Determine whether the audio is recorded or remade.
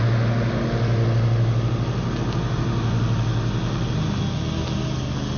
recorded